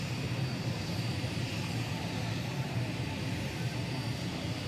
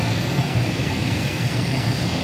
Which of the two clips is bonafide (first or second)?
first